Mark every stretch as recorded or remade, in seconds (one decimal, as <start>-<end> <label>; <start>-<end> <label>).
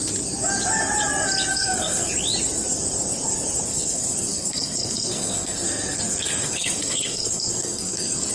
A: 0.0-1.5 recorded; 1.5-2.1 remade; 2.1-3.7 recorded; 3.7-8.3 remade